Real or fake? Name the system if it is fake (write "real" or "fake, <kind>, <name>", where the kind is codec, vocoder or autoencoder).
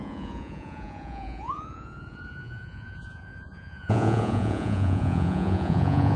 fake, vocoder, Vocos